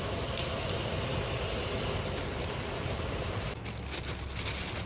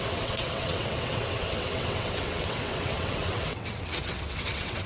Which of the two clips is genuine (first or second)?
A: first